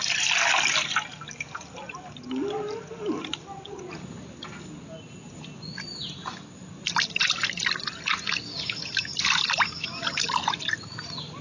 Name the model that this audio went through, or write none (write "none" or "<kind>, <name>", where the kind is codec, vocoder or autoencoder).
none